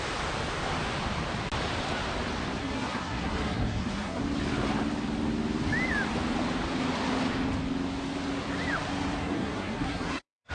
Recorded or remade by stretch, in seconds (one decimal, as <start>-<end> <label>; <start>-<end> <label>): 0.0-2.6 recorded; 2.6-4.2 remade; 4.2-9.2 recorded; 9.2-10.5 remade